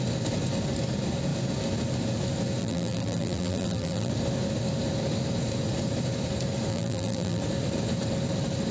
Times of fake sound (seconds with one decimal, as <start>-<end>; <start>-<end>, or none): 2.6-4.1; 6.7-7.4

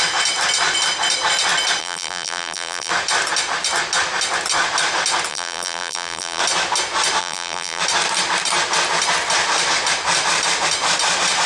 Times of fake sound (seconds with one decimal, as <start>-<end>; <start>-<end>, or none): 1.8-2.9; 5.3-6.4; 7.2-7.8

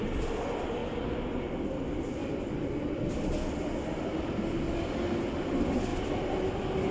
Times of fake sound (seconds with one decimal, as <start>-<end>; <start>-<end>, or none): none

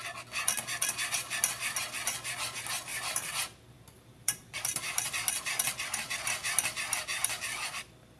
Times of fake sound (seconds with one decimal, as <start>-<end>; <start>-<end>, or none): 2.9-5.1

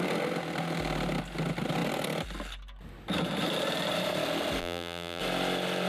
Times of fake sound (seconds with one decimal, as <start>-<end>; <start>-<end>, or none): 4.6-5.2

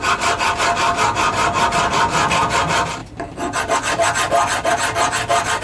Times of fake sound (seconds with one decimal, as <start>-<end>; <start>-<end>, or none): none

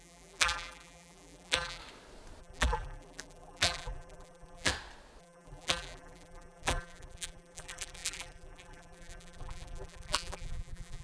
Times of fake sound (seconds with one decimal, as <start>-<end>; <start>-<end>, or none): 0.0-1.8; 2.4-4.7; 5.2-11.0